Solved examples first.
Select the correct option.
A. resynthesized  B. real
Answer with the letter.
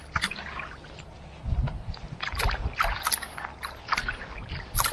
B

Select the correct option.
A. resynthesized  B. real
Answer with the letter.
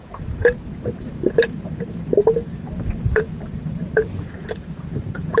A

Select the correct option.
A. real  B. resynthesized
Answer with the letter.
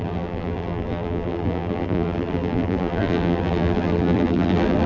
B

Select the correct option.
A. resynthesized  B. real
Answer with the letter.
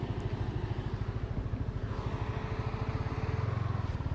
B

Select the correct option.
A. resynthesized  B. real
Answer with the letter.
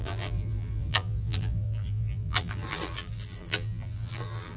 A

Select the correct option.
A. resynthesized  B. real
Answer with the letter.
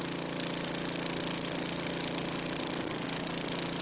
B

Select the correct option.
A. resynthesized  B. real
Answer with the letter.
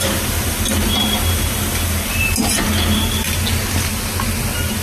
B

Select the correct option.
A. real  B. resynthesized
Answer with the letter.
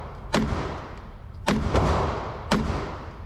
B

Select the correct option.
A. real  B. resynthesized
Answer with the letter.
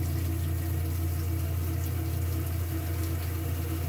A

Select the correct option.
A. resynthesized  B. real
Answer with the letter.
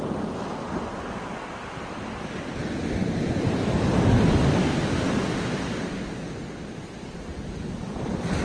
B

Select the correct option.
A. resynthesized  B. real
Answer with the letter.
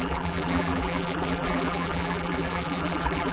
A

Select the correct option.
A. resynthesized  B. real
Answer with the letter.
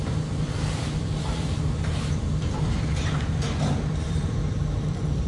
A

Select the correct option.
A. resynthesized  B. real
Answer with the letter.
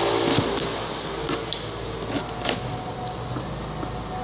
B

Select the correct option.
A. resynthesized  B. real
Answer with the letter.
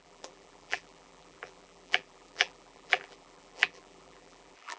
A